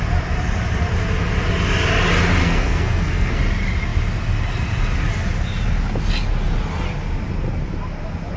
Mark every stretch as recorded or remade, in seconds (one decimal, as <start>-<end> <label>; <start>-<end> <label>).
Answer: 0.0-2.4 recorded; 2.4-3.4 remade; 3.4-8.4 recorded